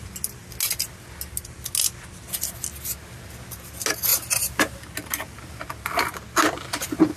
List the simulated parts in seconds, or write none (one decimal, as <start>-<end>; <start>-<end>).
none